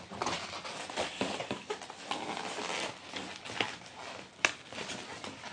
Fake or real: real